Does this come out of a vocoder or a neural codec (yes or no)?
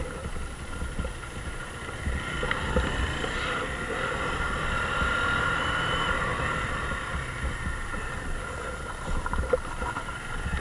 yes